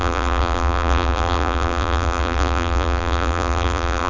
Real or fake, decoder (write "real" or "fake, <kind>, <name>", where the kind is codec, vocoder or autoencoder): fake, vocoder, BigVGAN v2